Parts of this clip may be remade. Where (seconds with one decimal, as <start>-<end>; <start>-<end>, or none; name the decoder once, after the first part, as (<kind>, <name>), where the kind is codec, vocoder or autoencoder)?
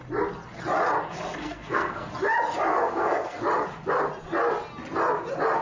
1.4-2.1 (codec, SNAC); 2.7-3.4